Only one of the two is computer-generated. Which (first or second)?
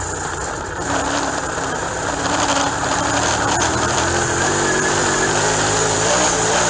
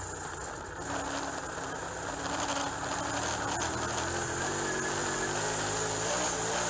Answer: first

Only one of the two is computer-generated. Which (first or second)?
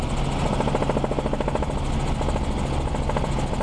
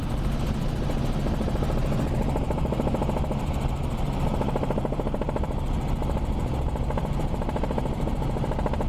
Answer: second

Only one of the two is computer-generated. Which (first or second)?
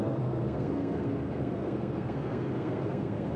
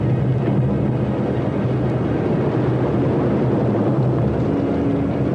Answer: first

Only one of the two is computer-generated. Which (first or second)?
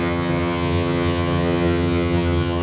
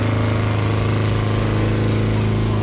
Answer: first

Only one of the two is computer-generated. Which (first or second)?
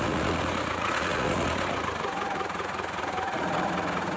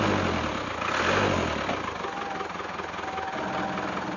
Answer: first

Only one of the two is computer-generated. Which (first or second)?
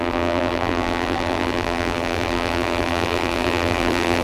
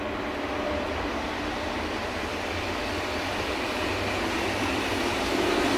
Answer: first